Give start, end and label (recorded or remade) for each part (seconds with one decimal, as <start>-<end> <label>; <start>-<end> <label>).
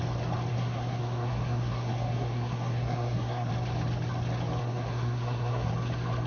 0.0-0.5 recorded; 0.5-3.5 remade; 3.5-4.6 recorded; 4.6-5.7 remade; 5.7-6.3 recorded